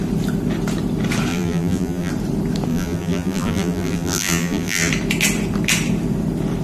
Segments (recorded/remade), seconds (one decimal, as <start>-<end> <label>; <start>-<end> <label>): 0.0-1.3 recorded; 1.3-2.1 remade; 2.1-2.7 recorded; 2.7-4.9 remade; 4.9-6.6 recorded